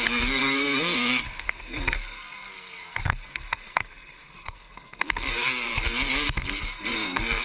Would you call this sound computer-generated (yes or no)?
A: yes